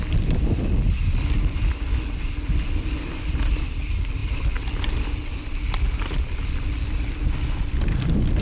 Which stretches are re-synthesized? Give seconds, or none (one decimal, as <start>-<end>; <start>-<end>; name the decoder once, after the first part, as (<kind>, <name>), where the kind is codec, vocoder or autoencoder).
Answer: none